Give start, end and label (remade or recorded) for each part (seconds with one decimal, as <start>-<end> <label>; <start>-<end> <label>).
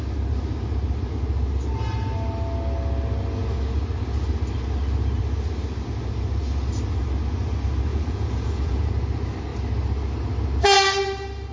0.0-7.9 recorded; 7.9-8.9 remade; 8.9-11.5 recorded